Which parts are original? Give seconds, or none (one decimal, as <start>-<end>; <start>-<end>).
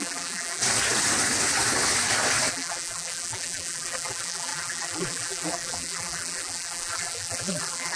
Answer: 0.6-2.5